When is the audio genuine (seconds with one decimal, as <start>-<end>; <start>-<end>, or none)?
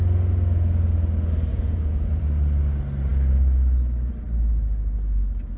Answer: 0.0-1.5; 2.2-5.6